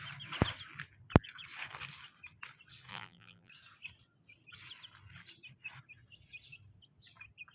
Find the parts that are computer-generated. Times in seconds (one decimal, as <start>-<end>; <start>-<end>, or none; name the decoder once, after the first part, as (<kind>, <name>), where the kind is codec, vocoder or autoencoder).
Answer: 2.9-3.5 (vocoder, BigVGAN v2)